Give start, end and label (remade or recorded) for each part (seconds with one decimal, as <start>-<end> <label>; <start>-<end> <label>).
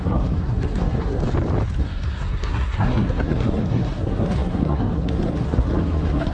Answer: 0.0-1.2 remade; 1.2-1.8 recorded; 1.8-6.3 remade